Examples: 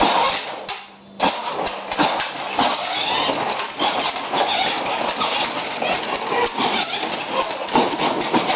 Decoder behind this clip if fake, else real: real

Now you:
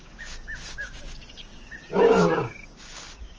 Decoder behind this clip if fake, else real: fake, codec, DAC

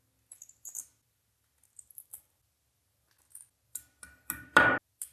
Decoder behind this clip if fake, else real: real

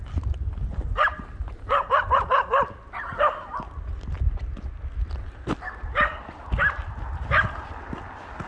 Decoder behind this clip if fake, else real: real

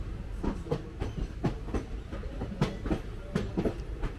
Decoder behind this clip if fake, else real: real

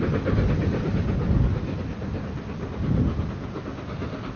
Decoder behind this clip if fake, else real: real